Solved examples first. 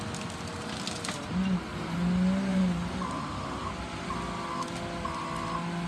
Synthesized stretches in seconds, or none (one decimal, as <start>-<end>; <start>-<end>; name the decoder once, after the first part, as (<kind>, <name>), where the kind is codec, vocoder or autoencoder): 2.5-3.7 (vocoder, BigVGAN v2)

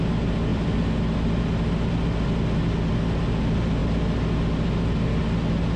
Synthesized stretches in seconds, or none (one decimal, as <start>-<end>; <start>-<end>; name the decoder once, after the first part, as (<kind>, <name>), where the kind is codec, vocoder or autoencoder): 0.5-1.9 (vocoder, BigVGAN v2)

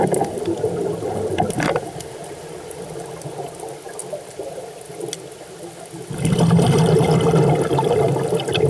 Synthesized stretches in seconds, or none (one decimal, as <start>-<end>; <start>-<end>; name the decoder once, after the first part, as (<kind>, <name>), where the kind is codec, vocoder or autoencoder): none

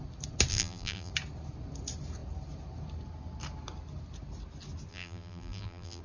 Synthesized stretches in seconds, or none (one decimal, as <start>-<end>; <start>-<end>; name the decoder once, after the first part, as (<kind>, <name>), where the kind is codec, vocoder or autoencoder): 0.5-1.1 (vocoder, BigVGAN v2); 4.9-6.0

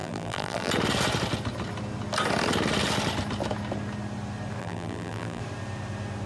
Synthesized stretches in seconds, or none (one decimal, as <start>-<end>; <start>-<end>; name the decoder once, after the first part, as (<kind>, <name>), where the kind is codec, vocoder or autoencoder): 0.0-0.7 (vocoder, BigVGAN v2); 4.6-5.4

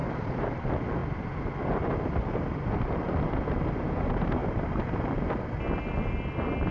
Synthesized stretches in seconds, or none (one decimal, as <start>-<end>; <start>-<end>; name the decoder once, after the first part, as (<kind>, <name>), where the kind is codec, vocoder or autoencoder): 0.0-0.6 (vocoder, BigVGAN v2); 4.4-5.1